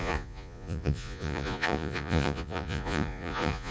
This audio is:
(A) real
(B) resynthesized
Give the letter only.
B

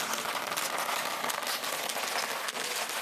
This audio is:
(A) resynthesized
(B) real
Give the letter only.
B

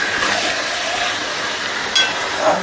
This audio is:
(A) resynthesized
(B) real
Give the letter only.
B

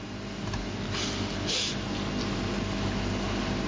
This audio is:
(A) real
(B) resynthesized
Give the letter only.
A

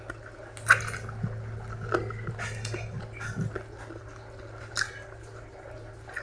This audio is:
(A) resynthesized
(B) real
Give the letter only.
B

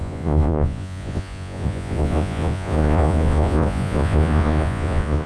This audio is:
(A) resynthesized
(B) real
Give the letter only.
A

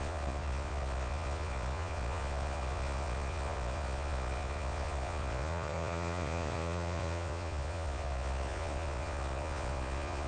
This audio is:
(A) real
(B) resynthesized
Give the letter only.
B